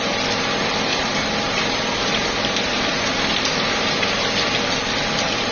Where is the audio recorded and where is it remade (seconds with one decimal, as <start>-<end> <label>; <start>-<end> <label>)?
0.0-0.9 recorded; 0.9-4.2 remade; 4.2-5.5 recorded